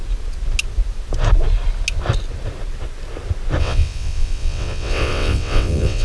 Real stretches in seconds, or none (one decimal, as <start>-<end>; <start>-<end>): 0.0-3.6